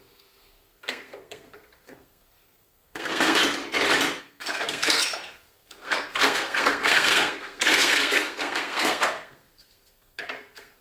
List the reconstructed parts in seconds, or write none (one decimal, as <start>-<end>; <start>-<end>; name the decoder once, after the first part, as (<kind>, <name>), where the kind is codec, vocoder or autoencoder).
0.0-3.4 (codec, SNAC); 4.2-10.8